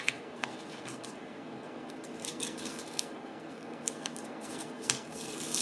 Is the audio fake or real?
fake